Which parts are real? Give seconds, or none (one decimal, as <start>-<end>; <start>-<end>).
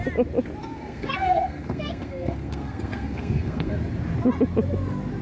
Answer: 0.0-0.6; 3.7-5.2